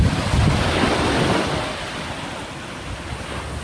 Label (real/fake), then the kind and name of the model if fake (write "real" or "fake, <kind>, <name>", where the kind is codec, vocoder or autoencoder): real